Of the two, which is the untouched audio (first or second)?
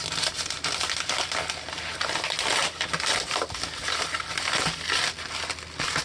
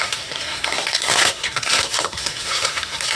first